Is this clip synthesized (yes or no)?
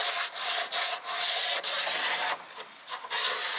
no